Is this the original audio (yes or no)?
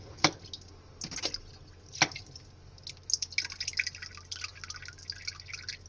yes